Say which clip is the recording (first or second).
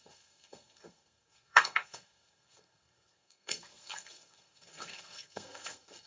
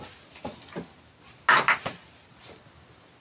second